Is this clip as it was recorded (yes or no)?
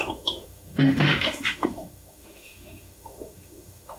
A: no